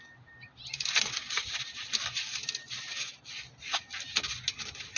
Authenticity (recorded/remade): recorded